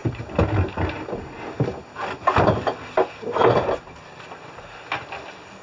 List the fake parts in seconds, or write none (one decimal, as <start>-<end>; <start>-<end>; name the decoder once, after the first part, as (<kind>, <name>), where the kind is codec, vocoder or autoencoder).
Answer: none

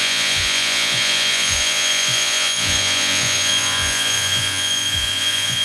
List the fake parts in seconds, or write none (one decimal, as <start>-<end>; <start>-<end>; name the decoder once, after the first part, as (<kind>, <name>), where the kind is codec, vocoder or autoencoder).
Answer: 0.0-5.6 (vocoder, Vocos)

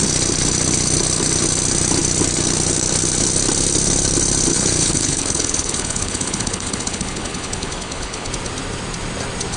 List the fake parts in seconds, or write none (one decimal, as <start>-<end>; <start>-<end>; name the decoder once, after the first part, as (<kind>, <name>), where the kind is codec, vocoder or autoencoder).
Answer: 4.5-8.3 (codec, HILCodec)

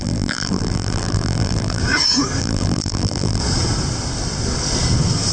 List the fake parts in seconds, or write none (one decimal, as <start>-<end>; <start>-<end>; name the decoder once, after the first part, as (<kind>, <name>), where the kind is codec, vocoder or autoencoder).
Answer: 0.0-1.8 (vocoder, BigVGAN v2); 2.4-3.4

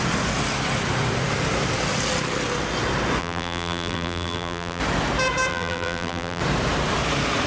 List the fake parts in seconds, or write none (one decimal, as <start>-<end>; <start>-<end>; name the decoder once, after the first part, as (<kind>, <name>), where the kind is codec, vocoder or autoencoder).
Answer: 3.2-4.8 (vocoder, BigVGAN v2); 5.5-6.4

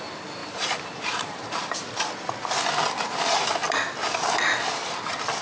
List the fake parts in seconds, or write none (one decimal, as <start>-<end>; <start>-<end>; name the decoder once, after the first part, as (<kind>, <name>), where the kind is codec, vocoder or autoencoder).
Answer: 0.4-1.6 (vocoder, BigVGAN v2)

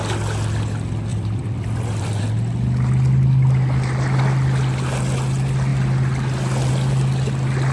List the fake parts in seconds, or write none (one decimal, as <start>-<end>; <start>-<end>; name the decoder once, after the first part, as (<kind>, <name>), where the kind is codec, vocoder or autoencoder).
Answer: 1.1-2.2 (vocoder, BigVGAN v2)